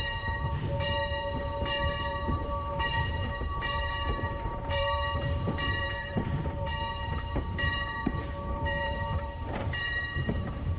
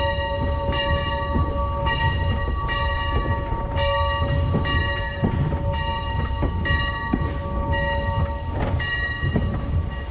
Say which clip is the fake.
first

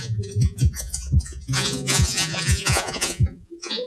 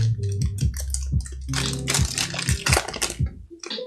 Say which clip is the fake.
first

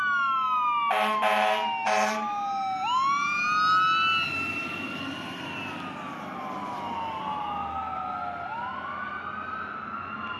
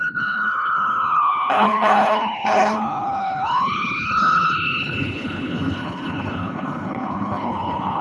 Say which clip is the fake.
second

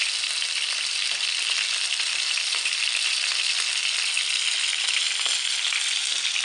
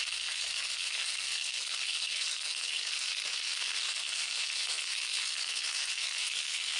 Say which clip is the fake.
second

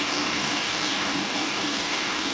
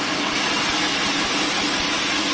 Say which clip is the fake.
first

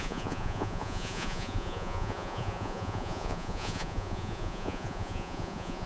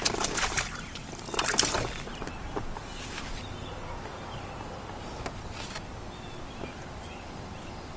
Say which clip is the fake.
first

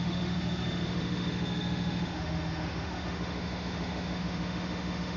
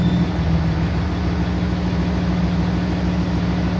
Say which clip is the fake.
first